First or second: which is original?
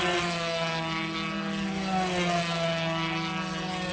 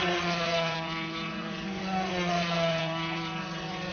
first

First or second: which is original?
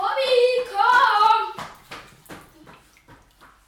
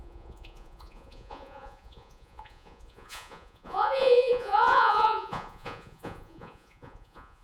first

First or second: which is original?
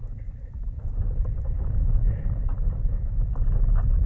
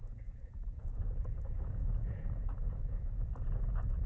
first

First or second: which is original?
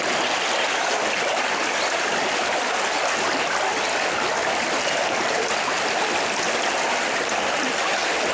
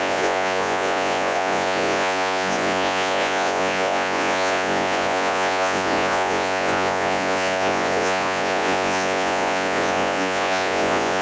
first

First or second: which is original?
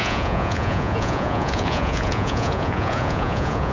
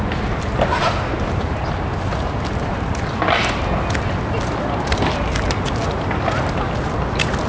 second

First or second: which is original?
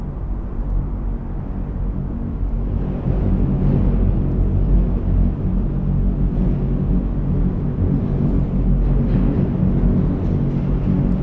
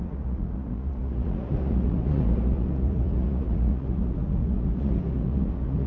first